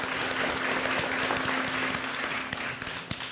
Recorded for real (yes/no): yes